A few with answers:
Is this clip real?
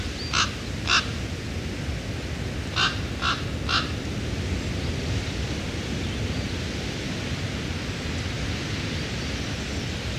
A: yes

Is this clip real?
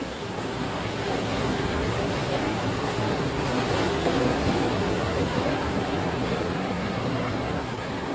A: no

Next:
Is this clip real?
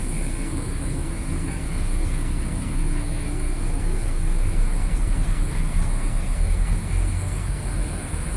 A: no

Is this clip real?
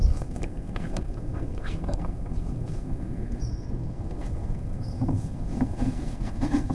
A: no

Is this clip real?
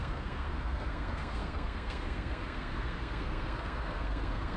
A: no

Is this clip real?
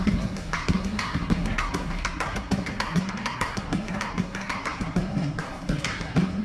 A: no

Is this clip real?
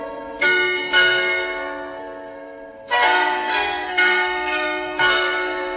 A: no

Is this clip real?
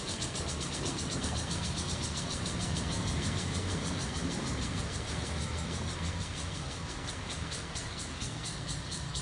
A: no